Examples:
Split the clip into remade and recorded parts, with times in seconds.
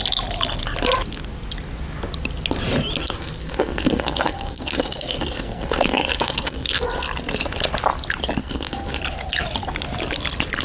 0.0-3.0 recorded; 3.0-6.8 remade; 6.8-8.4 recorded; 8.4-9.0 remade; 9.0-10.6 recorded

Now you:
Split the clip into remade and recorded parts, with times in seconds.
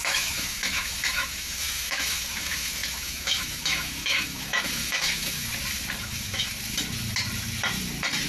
0.0-5.5 remade; 5.5-6.0 recorded; 6.0-6.5 remade; 6.5-8.3 recorded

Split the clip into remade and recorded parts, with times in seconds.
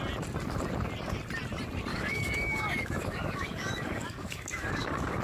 0.0-1.9 recorded; 1.9-5.2 remade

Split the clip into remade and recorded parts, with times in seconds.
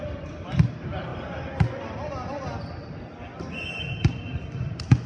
0.0-5.1 recorded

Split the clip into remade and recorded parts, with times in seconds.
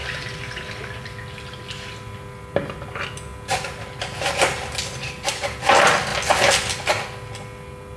0.0-8.0 recorded